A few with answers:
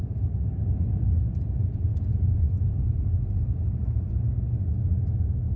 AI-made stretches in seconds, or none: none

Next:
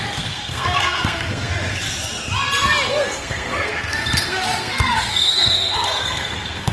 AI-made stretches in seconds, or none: 0.0-1.5 (codec, SNAC); 2.9-6.7